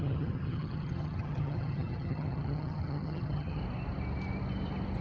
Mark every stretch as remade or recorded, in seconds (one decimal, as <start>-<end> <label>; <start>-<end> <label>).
0.0-3.6 remade; 3.6-5.0 recorded